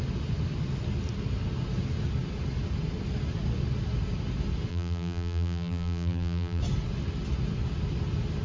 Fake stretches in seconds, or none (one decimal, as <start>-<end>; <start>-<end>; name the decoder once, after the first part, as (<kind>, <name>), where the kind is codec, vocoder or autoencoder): 4.7-6.6 (vocoder, BigVGAN v2)